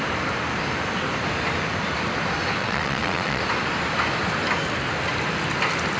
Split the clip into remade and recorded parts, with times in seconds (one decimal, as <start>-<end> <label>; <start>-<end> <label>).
0.0-2.6 recorded; 2.6-3.4 remade; 3.4-6.0 recorded